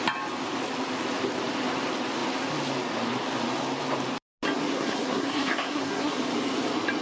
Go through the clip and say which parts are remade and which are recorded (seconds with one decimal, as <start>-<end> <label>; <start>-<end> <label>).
0.0-4.7 recorded; 4.7-6.2 remade; 6.2-7.0 recorded